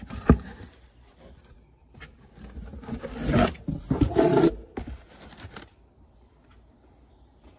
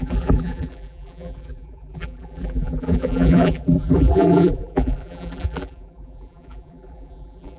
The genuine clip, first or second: first